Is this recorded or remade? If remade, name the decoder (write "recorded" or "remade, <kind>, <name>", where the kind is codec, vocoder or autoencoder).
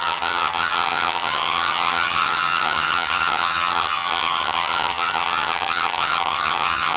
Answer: remade, vocoder, HiFi-GAN